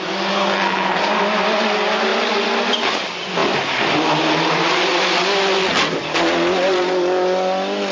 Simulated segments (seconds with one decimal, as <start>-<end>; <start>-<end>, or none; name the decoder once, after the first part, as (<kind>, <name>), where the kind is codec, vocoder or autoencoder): none